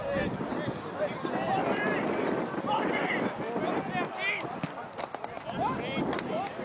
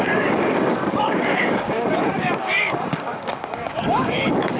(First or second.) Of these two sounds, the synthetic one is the second